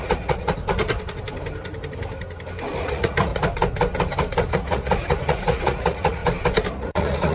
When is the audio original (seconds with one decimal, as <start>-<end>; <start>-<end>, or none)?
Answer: 0.6-2.8; 3.3-4.5; 6.2-6.7

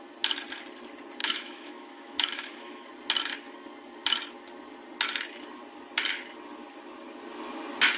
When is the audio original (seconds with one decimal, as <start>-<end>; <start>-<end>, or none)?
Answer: 0.0-1.2; 2.9-8.0

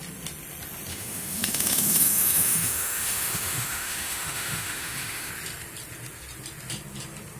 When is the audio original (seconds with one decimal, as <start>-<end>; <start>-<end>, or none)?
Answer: 0.0-0.9; 5.3-7.4

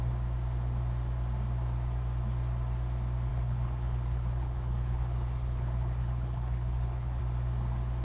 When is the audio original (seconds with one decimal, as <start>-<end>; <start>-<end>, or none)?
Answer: 0.0-3.3; 7.2-8.0